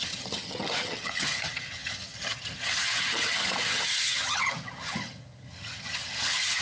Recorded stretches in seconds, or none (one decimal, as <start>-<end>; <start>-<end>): none